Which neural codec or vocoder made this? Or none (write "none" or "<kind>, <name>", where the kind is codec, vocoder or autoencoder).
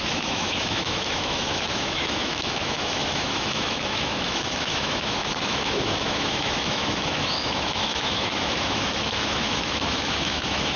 autoencoder, DAC-VAE